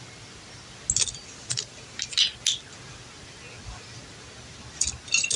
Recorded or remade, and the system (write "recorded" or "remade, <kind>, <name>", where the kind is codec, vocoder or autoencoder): recorded